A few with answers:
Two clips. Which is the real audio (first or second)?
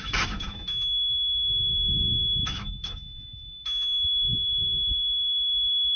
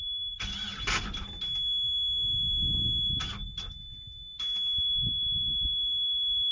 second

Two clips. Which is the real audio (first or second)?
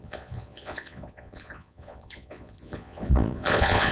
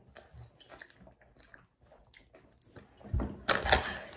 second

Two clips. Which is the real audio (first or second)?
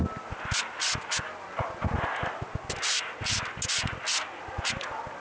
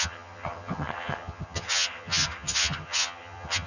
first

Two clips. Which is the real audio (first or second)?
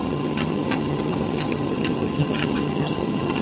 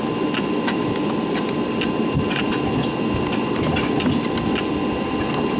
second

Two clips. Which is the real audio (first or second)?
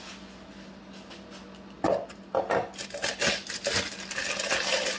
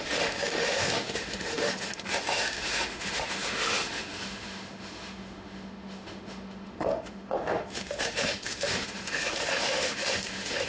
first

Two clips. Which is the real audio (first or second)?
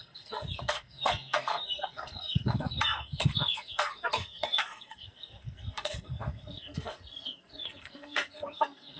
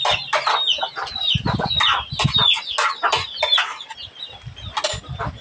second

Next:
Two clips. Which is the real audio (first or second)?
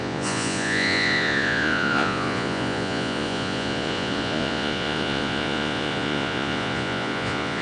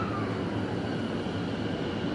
second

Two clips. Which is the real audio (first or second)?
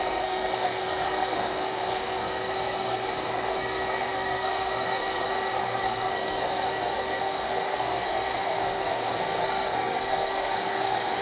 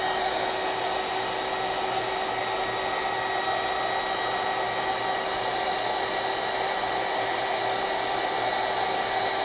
second